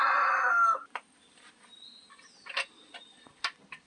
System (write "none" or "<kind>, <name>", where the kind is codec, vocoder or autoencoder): none